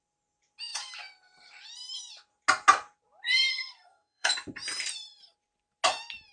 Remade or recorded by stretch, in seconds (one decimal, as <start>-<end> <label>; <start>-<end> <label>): 0.0-3.5 recorded; 3.5-4.3 remade; 4.3-6.3 recorded